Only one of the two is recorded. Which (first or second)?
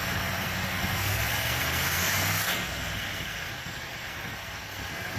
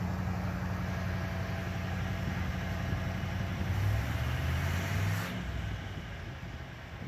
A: second